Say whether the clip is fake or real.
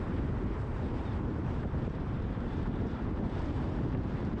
fake